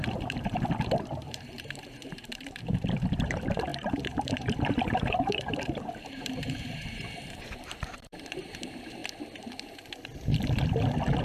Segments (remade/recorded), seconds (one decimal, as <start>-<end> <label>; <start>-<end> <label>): 0.0-9.0 remade; 9.0-11.2 recorded